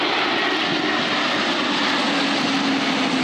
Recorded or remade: recorded